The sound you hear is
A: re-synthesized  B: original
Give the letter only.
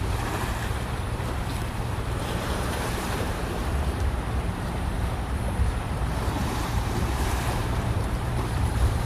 A